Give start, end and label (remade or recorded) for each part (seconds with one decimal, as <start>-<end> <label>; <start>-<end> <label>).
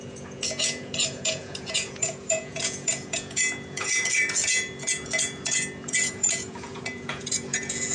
0.0-7.9 remade